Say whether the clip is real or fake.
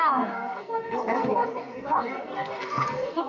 fake